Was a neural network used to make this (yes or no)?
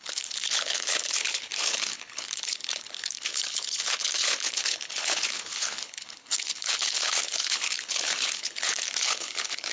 yes